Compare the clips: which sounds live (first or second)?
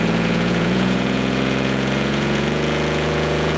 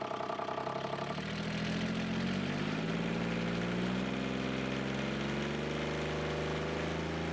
second